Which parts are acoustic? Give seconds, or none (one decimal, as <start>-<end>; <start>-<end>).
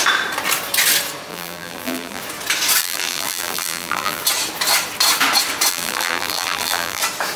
0.0-1.3; 2.2-2.8; 4.2-5.7; 7.0-7.4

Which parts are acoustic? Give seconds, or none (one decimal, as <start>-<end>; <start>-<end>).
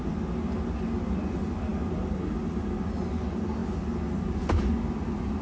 0.0-5.4